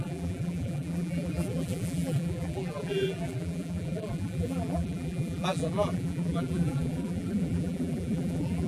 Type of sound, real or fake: fake